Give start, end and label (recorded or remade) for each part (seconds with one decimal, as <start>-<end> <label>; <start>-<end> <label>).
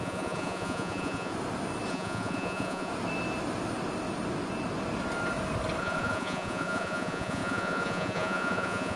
0.0-1.3 remade; 1.3-1.9 recorded; 1.9-2.9 remade; 2.9-5.8 recorded; 5.8-9.0 remade